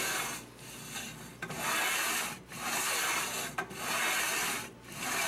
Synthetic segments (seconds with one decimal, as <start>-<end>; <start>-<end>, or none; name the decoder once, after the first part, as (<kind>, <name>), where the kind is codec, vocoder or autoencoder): 4.4-5.3 (vocoder, BigVGAN v2)